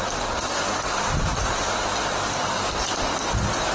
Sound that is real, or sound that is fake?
real